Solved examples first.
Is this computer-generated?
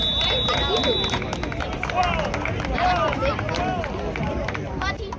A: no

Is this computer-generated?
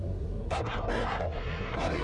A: yes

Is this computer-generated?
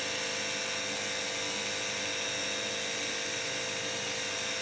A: no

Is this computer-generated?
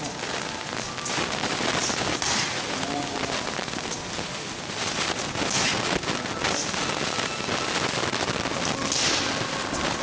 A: no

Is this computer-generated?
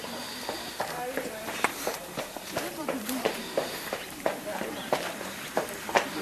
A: yes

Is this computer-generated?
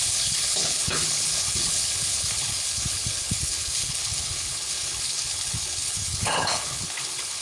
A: yes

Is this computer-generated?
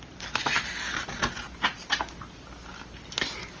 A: no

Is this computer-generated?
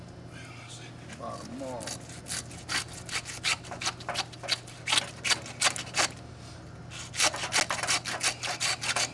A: no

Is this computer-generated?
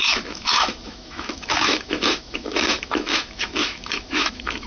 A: yes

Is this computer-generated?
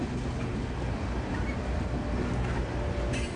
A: no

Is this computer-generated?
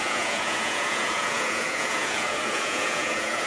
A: yes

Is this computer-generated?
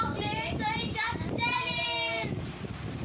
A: yes